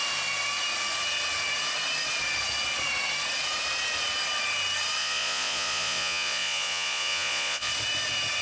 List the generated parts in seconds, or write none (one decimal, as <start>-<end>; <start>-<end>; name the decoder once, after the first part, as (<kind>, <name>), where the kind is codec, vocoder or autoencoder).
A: 5.0-7.7 (vocoder, Vocos)